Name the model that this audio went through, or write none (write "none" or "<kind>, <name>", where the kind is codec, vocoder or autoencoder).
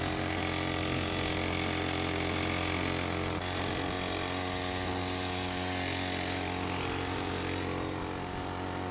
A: none